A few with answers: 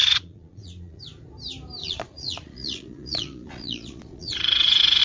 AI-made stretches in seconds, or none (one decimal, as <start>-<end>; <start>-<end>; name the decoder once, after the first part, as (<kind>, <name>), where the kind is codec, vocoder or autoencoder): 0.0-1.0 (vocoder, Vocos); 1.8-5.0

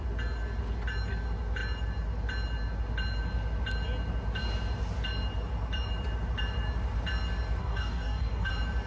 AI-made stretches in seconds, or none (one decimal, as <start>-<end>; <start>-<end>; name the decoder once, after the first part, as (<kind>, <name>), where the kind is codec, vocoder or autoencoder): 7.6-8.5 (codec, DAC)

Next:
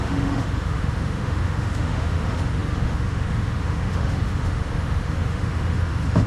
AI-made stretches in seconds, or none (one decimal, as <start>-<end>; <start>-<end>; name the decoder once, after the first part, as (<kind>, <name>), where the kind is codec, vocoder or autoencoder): 0.0-6.3 (autoencoder, DAC-VAE)

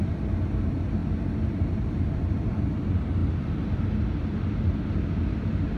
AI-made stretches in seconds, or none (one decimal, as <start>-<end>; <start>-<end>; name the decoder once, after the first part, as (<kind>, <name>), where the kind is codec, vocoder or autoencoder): none